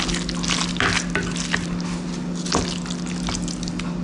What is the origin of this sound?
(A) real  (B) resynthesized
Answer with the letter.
A